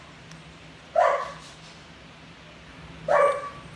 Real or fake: real